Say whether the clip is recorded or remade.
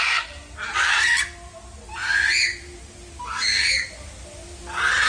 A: recorded